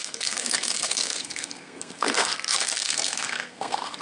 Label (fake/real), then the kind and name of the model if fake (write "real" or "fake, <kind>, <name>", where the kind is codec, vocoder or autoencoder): fake, codec, SNAC